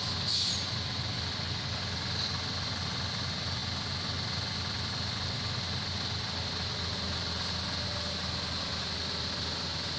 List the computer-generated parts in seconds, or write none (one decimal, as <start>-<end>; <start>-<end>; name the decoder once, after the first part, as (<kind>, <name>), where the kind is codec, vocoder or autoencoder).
none